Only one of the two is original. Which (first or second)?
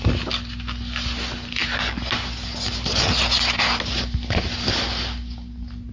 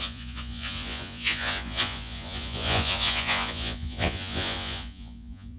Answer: first